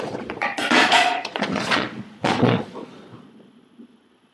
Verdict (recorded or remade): remade